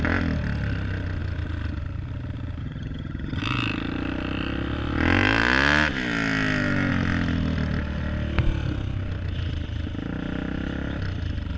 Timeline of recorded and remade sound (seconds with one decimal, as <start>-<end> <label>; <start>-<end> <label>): 0.0-2.6 recorded; 2.6-3.4 remade; 3.4-11.6 recorded